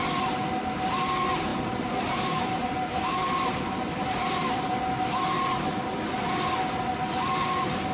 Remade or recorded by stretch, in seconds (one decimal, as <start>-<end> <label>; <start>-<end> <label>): 0.0-1.5 recorded; 1.5-5.2 remade; 5.2-7.9 recorded